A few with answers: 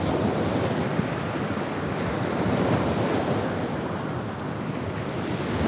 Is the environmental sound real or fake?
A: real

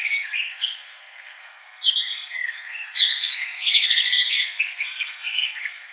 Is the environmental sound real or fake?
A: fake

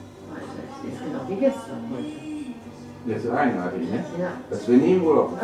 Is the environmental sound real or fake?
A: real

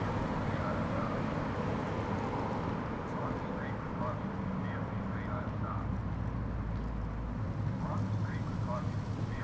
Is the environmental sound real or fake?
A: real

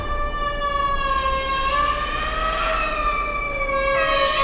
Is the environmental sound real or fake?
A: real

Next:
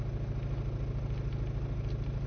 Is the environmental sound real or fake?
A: real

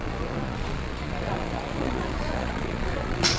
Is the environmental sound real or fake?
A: fake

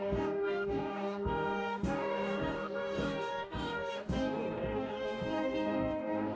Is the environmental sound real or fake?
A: fake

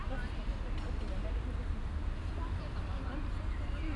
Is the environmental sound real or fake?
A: real